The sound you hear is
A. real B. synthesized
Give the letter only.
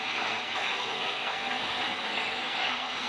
B